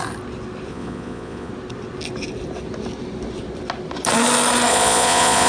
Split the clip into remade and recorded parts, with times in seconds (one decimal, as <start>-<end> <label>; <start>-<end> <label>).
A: 0.0-0.7 recorded; 0.7-1.5 remade; 1.5-4.7 recorded; 4.7-5.5 remade